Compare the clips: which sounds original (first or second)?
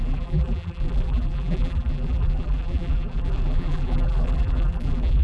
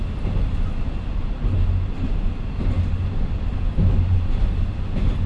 second